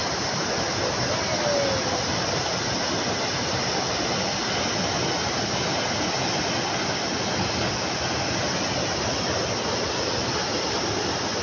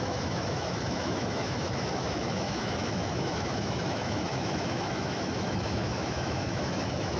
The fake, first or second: second